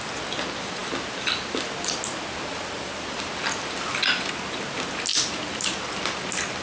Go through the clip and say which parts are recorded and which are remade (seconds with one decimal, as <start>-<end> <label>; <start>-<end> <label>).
0.0-6.6 recorded